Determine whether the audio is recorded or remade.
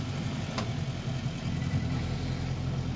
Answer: recorded